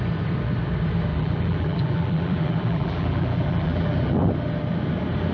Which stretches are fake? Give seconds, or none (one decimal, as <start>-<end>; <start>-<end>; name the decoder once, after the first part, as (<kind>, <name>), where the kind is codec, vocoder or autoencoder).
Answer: 1.1-4.3 (vocoder, BigVGAN v2)